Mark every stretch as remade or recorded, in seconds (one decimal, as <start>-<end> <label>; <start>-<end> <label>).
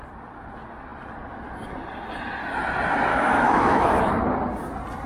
0.0-3.1 recorded; 3.1-4.0 remade; 4.0-5.1 recorded